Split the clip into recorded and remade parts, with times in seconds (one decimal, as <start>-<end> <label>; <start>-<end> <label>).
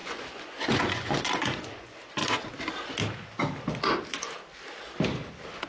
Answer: 0.0-2.2 remade; 2.2-5.7 recorded